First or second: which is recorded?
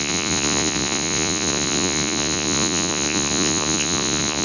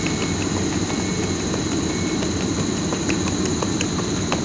second